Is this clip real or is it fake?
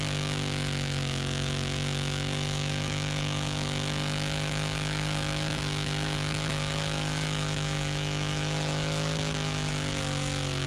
fake